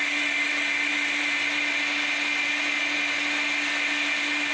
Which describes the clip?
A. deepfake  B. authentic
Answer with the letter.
B